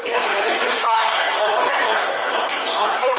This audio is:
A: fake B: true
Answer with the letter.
A